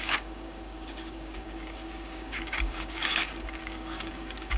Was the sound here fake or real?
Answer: fake